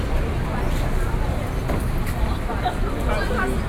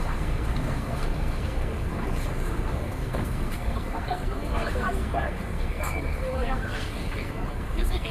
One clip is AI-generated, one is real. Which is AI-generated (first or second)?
second